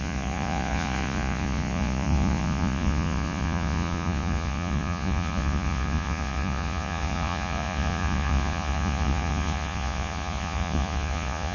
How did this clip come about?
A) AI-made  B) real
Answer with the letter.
A